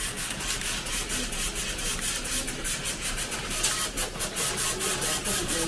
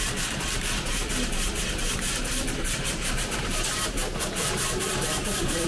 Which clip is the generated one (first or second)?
second